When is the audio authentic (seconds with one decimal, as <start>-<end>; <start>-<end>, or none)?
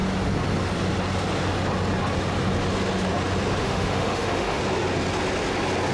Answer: 0.0-3.6; 4.6-5.9